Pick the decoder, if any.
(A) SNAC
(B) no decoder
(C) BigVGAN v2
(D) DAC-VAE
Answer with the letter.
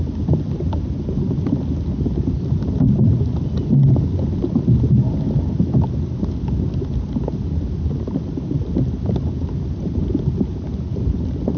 B